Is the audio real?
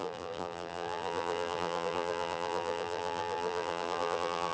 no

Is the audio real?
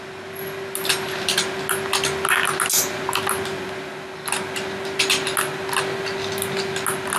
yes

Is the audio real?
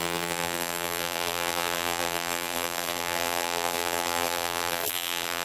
no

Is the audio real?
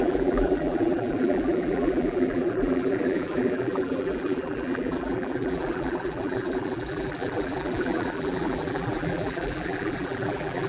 no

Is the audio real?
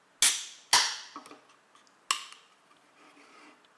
yes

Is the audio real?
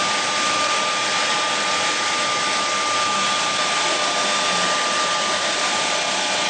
yes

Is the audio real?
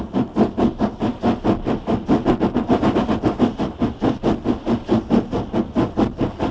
yes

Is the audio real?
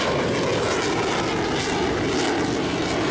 yes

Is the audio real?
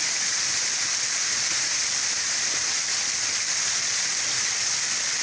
yes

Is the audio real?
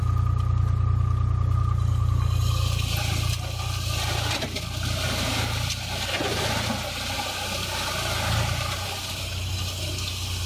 yes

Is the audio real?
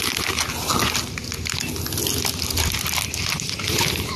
yes